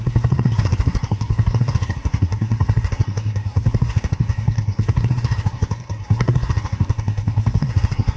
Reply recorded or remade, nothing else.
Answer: remade